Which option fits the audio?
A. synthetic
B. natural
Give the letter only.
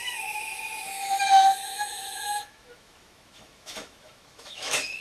A